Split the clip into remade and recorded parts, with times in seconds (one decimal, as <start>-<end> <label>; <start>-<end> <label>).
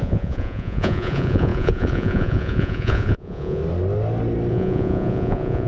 0.0-3.6 remade; 3.6-4.5 recorded; 4.5-5.7 remade